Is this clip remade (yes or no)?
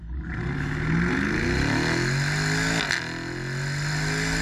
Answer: no